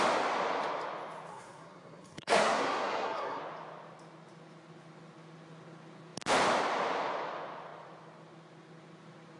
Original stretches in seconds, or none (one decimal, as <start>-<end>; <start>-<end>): 0.0-1.3; 3.4-9.4